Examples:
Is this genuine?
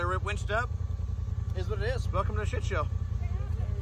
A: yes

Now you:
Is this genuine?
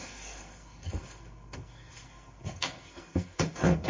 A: no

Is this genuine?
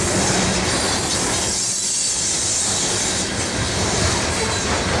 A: yes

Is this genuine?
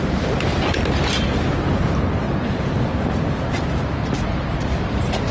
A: yes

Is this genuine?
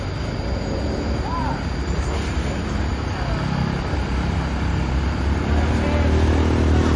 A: yes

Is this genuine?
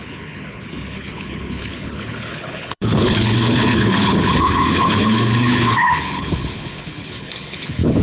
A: no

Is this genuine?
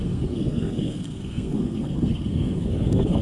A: no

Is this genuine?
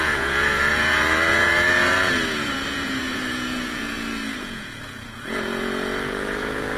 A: no